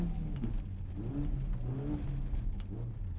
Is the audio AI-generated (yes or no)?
no